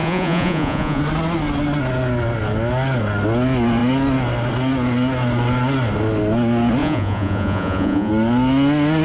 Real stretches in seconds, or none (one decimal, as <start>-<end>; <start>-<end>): 1.0-6.8; 8.1-9.0